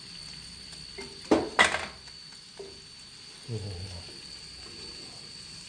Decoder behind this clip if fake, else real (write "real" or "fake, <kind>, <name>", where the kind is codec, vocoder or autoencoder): real